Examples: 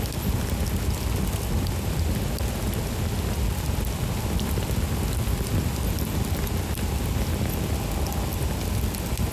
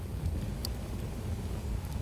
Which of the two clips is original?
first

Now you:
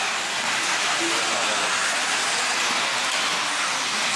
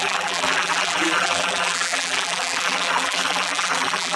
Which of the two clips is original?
first